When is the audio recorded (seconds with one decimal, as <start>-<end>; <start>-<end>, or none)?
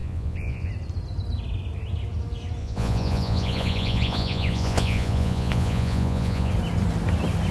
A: 0.7-2.6; 6.5-7.5